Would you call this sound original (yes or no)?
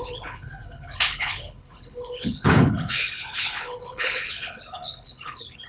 no